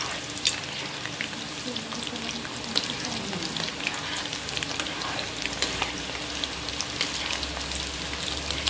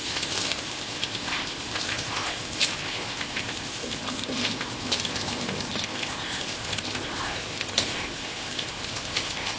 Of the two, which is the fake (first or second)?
second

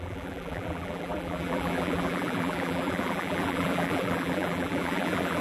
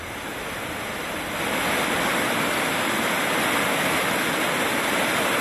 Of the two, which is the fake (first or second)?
first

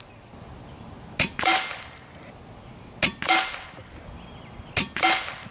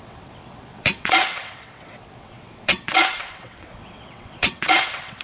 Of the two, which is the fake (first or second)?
second